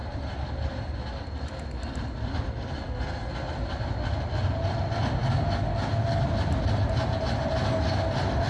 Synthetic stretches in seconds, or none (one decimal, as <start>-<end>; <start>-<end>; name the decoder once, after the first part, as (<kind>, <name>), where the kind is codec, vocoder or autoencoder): none